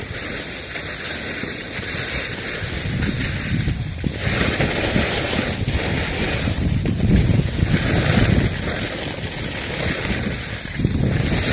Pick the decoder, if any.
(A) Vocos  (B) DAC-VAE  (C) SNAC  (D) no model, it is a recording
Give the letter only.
D